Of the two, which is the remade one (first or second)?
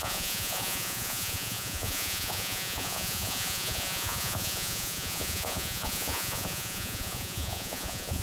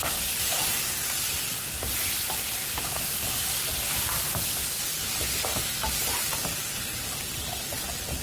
first